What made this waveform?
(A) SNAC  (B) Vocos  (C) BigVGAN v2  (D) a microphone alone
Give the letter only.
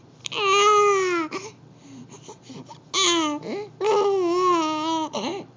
D